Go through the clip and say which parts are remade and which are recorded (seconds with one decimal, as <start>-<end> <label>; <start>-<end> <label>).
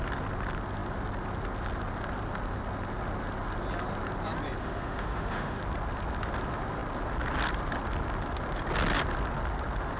0.0-4.6 recorded; 4.6-5.6 remade; 5.6-10.0 recorded